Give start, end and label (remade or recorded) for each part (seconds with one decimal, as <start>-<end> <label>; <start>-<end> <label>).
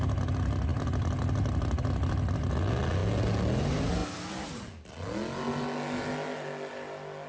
0.0-0.7 recorded; 0.7-2.5 remade; 2.5-7.3 recorded